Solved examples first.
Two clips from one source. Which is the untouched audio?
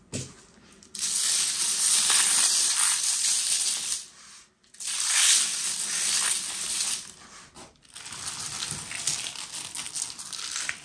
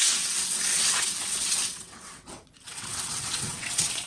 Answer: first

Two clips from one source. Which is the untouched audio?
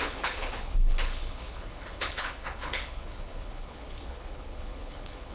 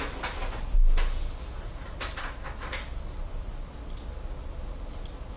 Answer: second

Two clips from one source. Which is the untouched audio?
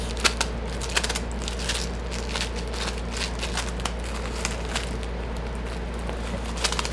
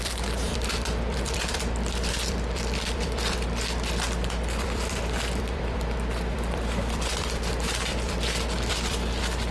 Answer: first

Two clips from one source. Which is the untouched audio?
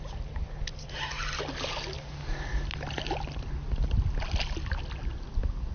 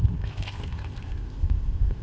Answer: first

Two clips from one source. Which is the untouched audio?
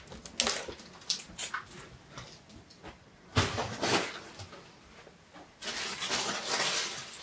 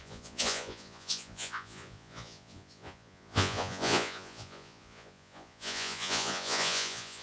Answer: first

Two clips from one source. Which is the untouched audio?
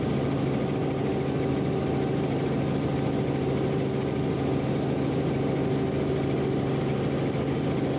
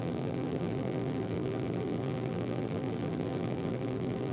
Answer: first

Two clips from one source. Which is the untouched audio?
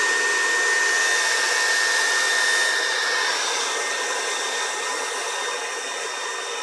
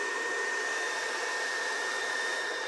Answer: first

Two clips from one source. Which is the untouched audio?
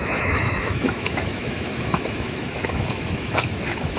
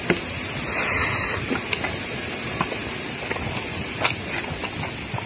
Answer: second